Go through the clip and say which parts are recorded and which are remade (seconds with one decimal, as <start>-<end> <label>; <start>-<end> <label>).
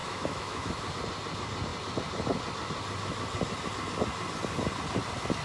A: 0.0-0.9 remade; 0.9-5.4 recorded